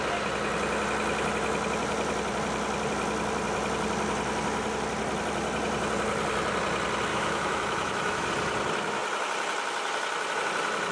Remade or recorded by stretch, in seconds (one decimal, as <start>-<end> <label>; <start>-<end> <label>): 0.0-7.1 recorded; 7.1-8.3 remade; 8.3-10.9 recorded